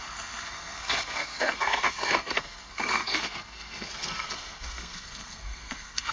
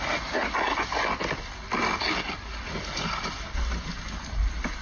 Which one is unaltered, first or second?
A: second